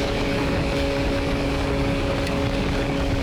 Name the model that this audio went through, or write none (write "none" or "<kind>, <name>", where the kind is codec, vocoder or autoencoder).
codec, DAC